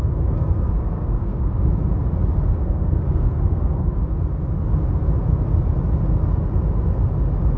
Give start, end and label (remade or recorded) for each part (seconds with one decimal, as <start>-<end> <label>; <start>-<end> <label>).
0.0-1.5 remade; 1.5-2.5 recorded; 2.5-3.9 remade; 3.9-7.6 recorded